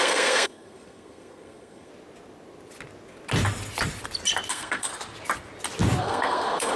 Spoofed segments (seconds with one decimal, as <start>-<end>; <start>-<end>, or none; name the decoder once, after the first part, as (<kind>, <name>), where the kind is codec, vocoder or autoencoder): 0.0-1.9 (codec, SNAC); 4.5-4.9; 6.0-6.8